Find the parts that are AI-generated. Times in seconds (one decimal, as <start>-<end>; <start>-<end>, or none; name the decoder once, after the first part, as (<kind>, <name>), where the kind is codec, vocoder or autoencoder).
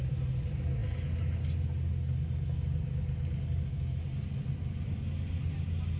none